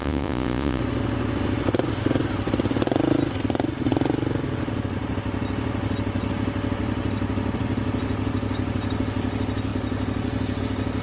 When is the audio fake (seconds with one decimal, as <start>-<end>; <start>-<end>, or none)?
0.0-0.8